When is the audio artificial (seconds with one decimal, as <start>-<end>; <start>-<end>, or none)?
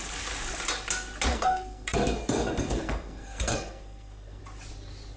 1.3-4.4